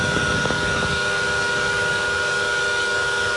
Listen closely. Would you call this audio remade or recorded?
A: remade